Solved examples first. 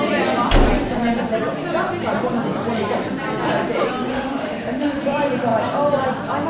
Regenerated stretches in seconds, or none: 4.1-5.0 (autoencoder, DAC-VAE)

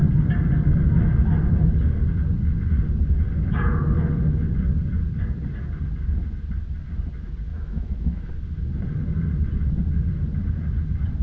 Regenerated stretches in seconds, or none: 7.5-8.3 (autoencoder, DAC-VAE)

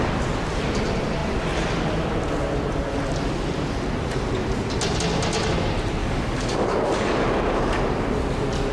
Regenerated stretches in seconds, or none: 6.0-7.8 (codec, DAC)

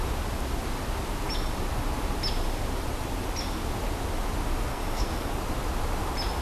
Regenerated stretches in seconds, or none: 4.7-5.3 (codec, SNAC)

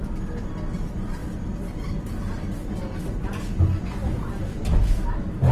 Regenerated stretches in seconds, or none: none

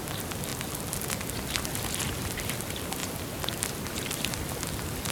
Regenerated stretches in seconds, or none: none

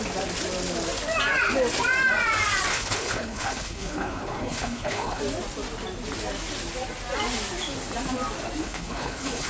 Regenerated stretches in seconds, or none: 2.7-5.2 (codec, HILCodec); 8.6-9.5